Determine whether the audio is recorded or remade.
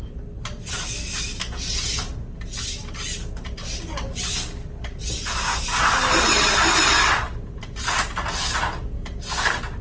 recorded